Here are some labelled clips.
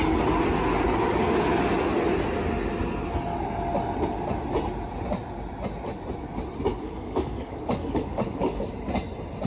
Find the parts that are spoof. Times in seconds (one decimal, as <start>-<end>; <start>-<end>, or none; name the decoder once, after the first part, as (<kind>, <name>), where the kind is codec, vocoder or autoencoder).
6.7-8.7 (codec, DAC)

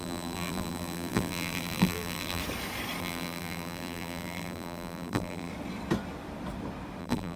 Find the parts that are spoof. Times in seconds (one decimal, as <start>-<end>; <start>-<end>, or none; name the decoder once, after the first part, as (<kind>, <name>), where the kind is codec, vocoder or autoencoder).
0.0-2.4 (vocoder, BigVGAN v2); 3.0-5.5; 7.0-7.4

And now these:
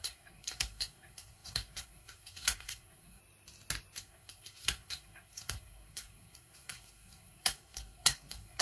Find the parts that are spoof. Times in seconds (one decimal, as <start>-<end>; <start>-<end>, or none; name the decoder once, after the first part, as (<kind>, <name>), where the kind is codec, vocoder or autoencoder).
0.0-3.2 (codec, SNAC); 4.0-8.6